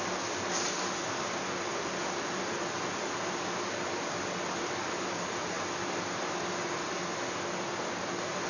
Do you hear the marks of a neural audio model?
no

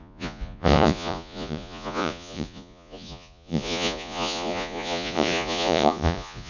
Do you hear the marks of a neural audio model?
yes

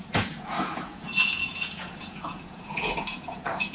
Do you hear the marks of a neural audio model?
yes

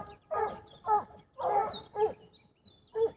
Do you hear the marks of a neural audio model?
yes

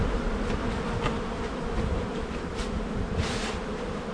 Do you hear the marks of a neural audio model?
no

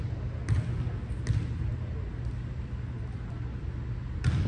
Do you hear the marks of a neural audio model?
no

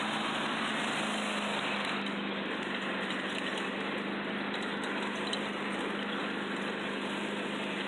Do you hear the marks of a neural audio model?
no